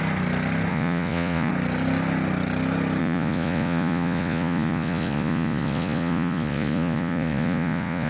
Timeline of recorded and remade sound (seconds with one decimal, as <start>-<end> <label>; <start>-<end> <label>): 0.0-0.7 recorded; 0.7-1.5 remade; 1.5-3.0 recorded; 3.0-8.1 remade